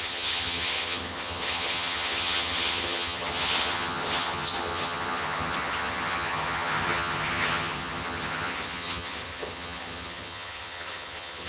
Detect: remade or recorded remade